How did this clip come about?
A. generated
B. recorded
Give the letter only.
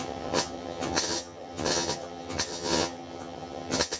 A